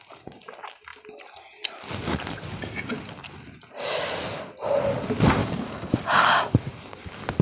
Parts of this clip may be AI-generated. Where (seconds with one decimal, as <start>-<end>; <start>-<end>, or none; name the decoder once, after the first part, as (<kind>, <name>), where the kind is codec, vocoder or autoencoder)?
5.4-6.4 (codec, DAC)